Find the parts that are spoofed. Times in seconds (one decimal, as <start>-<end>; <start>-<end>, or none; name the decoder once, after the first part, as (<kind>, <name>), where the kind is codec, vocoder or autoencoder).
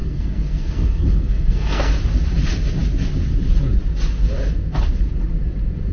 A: 0.0-1.9 (codec, SNAC)